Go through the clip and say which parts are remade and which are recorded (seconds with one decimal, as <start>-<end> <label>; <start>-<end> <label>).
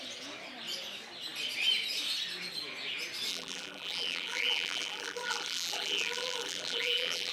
0.0-3.3 recorded; 3.3-7.3 remade